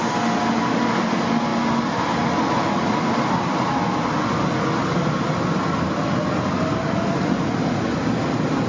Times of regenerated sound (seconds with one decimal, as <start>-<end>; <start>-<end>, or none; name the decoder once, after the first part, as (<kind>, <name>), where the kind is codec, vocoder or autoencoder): none